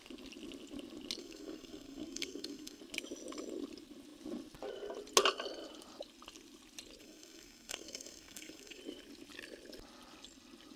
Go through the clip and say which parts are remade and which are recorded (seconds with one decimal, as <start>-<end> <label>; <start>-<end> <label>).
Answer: 0.0-1.2 recorded; 1.2-2.8 remade; 2.8-7.0 recorded; 7.0-8.8 remade; 8.8-10.8 recorded